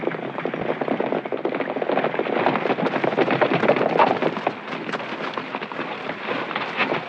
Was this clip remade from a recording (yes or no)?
no